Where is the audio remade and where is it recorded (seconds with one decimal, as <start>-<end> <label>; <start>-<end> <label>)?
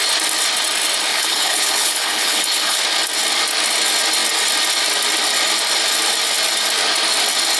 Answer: 0.0-1.1 recorded; 1.1-2.8 remade; 2.8-7.6 recorded